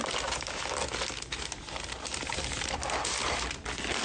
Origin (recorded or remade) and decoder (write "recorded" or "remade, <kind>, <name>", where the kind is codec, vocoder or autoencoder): recorded